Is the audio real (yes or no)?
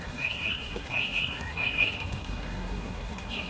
no